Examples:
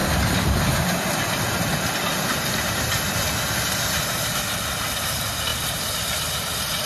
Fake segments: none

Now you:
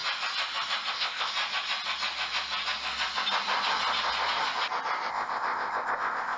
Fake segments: 0.9-1.3; 5.1-6.4

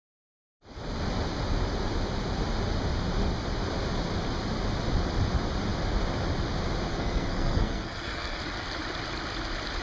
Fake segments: 6.9-8.4

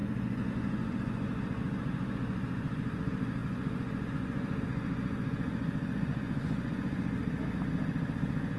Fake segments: 0.0-7.2